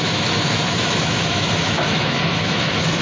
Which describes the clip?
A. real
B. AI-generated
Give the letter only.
B